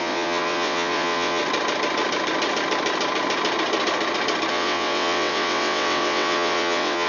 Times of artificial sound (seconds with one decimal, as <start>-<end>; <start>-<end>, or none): 0.0-1.4; 4.5-7.1